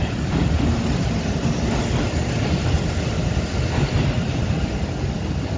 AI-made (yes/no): no